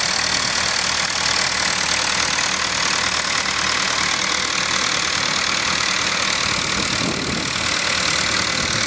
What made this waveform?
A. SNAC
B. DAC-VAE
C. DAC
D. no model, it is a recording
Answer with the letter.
D